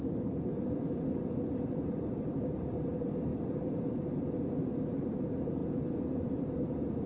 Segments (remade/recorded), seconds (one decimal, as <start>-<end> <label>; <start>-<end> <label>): 0.0-0.5 remade; 0.5-1.7 recorded; 1.7-3.3 remade; 3.3-4.1 recorded; 4.1-7.1 remade